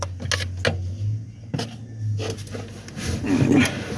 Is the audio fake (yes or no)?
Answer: no